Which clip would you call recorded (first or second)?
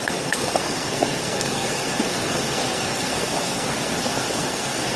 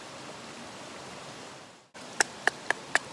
second